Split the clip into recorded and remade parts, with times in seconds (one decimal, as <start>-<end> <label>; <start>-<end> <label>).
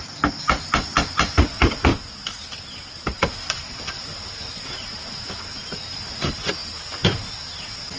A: 0.0-8.0 recorded